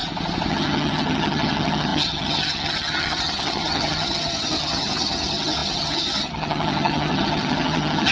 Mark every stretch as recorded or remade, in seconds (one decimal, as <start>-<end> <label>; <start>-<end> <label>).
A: 0.0-0.5 recorded; 0.5-8.1 remade